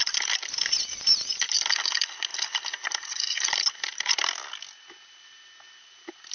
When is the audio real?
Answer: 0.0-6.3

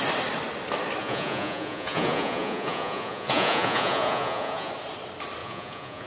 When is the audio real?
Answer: 0.0-1.0; 4.7-5.4

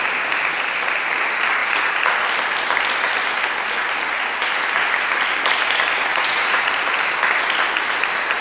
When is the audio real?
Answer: 0.0-6.1; 6.7-8.4

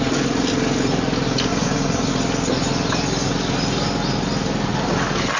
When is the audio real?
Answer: 0.0-1.5; 2.1-5.4

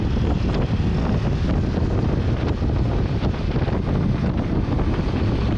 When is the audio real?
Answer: 0.0-5.6